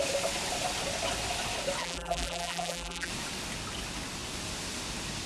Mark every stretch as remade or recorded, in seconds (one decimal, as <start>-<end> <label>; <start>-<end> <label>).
0.0-1.8 recorded; 1.8-3.1 remade; 3.1-5.3 recorded

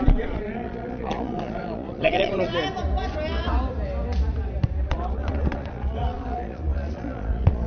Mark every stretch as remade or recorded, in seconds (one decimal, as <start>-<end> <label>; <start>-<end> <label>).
0.0-2.5 remade; 2.5-4.9 recorded; 4.9-7.7 remade

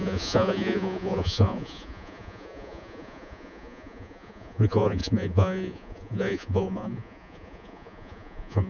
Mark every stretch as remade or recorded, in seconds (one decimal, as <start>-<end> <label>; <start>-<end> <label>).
0.0-8.7 remade

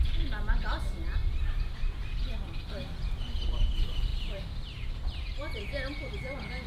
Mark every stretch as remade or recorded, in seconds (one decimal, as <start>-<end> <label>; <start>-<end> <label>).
0.0-1.2 recorded; 1.2-2.0 remade; 2.0-4.1 recorded; 4.1-5.6 remade; 5.6-6.7 recorded